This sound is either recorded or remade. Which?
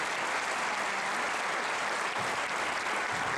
recorded